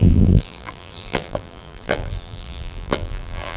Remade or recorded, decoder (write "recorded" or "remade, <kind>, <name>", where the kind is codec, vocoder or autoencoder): remade, vocoder, BigVGAN v2